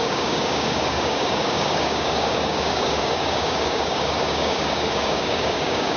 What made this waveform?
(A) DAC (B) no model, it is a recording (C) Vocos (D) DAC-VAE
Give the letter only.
A